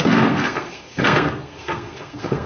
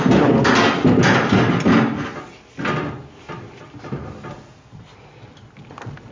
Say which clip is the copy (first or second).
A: first